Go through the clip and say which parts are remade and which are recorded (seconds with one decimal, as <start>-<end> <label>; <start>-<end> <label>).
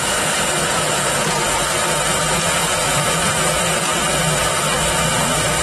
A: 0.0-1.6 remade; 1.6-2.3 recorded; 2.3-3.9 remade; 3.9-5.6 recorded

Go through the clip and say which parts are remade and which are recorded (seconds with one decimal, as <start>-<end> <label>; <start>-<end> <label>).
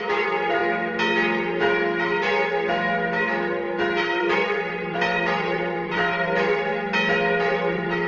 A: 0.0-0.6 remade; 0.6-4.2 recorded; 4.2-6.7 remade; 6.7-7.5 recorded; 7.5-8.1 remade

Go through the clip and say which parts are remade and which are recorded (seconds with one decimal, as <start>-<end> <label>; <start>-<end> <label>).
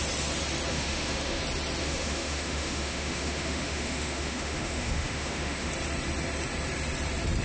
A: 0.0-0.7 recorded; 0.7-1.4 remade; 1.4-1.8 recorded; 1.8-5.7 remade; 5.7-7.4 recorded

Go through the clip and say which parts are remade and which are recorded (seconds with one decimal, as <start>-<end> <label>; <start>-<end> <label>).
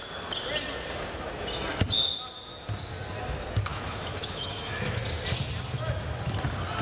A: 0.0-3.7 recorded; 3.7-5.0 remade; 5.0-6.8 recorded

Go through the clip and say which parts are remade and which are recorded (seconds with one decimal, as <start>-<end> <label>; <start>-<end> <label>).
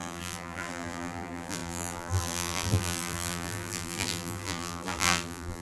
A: 0.0-5.6 remade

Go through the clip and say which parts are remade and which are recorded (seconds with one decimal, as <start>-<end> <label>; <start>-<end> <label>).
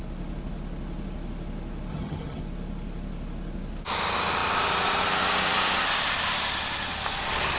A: 0.0-1.9 recorded; 1.9-2.4 remade; 2.4-7.6 recorded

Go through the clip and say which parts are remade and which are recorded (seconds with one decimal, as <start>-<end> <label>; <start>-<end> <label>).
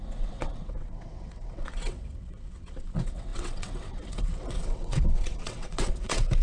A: 0.0-6.4 remade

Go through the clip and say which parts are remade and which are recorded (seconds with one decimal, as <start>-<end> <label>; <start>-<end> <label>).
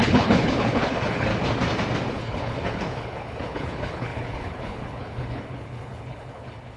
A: 0.0-1.3 remade; 1.3-2.1 recorded; 2.1-6.8 remade